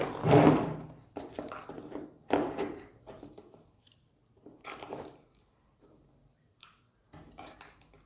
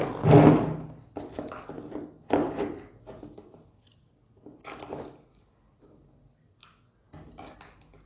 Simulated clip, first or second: first